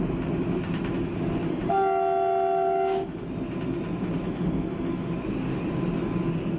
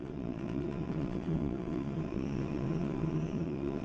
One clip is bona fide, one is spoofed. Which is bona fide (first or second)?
first